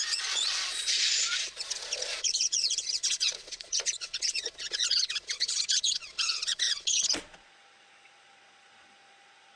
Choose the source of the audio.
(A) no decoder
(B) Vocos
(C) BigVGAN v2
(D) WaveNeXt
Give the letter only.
B